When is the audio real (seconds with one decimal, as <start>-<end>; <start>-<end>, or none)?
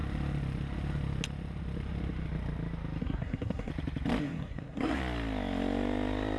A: 0.0-3.0; 3.7-4.2; 5.0-6.4